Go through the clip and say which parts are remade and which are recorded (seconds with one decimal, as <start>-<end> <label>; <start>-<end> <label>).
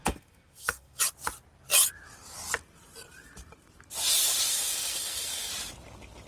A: 0.0-1.0 remade; 1.0-4.5 recorded; 4.5-5.5 remade; 5.5-6.3 recorded